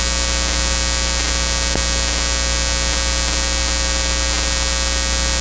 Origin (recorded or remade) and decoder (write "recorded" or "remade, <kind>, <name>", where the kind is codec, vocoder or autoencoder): recorded